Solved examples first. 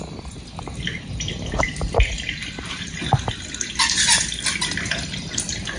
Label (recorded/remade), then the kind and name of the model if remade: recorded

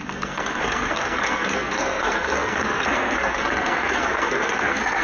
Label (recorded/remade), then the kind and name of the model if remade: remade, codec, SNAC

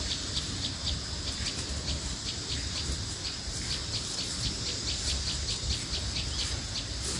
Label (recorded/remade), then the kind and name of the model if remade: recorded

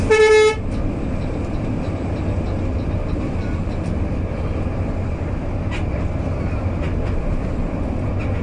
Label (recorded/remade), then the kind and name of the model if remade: recorded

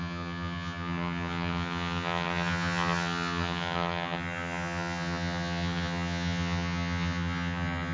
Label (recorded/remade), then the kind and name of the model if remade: remade, vocoder, HiFi-GAN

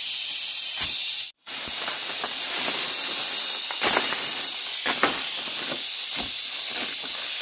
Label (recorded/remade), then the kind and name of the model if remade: recorded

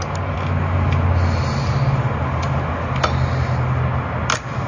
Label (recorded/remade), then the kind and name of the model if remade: recorded